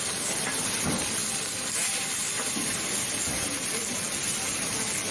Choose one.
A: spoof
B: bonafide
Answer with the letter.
B